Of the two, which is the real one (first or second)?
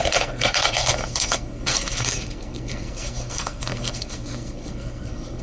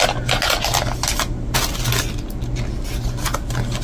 second